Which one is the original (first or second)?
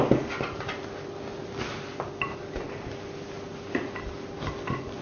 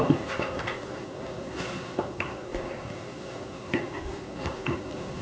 first